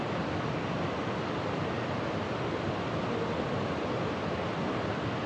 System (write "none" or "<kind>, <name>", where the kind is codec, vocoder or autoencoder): none